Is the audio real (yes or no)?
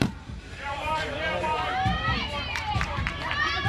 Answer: no